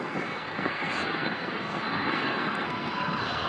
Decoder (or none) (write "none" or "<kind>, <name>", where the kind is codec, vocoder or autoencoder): codec, SNAC